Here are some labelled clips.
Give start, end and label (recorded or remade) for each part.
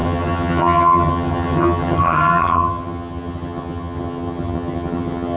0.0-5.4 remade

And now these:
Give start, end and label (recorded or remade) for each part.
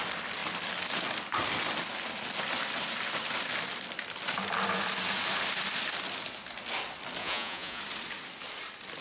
0.0-7.2 recorded; 7.2-7.8 remade; 7.8-9.0 recorded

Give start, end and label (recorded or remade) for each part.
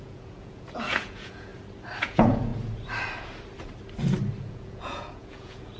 0.0-1.5 remade; 1.5-2.0 recorded; 2.0-2.5 remade; 2.5-4.4 recorded; 4.4-5.8 remade